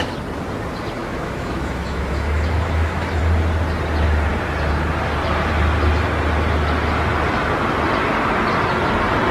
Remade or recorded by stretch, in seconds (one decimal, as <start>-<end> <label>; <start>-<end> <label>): 0.0-1.0 recorded; 1.0-3.2 remade; 3.2-9.3 recorded